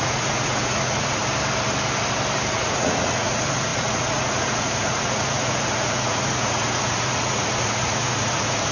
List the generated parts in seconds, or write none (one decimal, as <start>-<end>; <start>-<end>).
0.0-1.2; 2.5-8.7